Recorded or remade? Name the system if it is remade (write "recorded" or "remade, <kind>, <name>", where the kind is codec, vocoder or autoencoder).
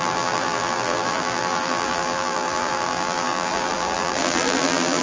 remade, vocoder, BigVGAN v2